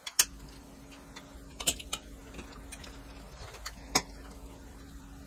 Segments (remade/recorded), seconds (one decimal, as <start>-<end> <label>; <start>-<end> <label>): 0.0-5.3 recorded